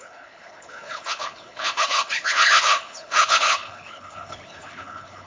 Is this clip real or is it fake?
fake